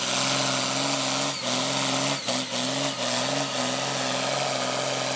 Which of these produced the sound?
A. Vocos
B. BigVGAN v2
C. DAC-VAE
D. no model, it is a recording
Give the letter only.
D